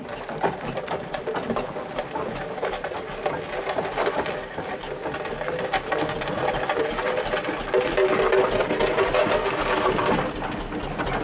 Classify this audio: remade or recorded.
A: recorded